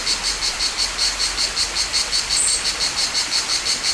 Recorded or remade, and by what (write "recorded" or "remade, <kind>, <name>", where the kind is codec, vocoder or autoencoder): recorded